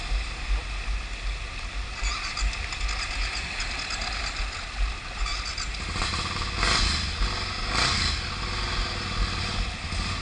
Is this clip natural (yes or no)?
yes